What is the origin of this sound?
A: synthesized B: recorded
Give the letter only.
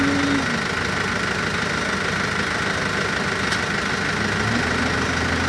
B